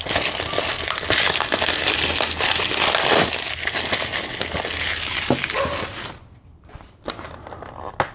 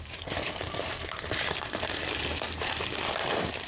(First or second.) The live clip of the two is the first